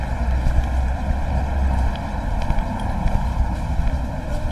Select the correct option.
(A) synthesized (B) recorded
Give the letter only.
B